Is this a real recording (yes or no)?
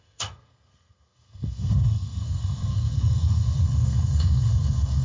no